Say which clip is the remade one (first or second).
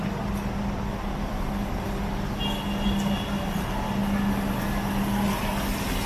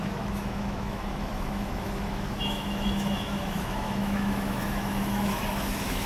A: second